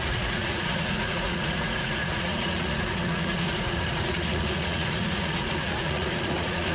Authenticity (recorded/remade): remade